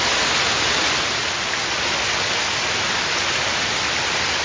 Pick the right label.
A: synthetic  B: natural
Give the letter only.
B